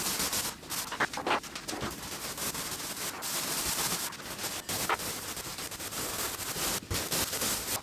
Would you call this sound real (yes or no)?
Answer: yes